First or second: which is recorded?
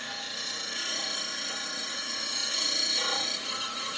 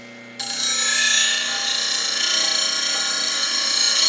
second